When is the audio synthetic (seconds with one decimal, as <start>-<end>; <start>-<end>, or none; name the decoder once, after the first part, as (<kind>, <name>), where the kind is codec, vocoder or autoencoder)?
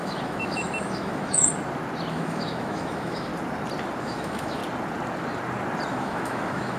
0.0-1.5 (autoencoder, DAC-VAE); 2.1-3.3; 4.0-4.6; 5.9-6.8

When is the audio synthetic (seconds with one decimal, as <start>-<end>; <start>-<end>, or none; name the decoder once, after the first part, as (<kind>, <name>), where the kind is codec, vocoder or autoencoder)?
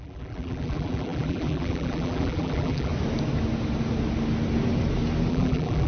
0.0-2.9 (vocoder, BigVGAN v2); 5.3-5.9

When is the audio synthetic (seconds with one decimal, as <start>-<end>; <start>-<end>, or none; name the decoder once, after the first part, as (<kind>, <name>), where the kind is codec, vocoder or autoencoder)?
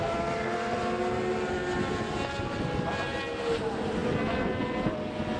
none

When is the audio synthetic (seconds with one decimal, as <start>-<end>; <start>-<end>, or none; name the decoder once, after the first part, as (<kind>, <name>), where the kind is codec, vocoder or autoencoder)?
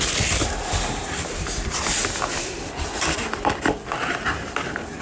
0.0-2.0 (vocoder, BigVGAN v2); 3.4-5.0